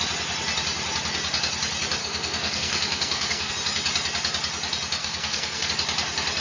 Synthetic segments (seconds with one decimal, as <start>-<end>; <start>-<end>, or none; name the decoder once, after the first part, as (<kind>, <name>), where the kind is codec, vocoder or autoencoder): 2.0-3.5 (codec, SNAC); 5.0-5.7